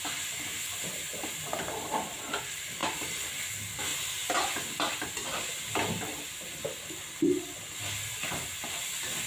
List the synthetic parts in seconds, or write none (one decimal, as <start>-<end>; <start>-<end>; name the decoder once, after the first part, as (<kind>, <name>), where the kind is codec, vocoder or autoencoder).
0.0-3.9 (vocoder, BigVGAN v2); 8.2-9.3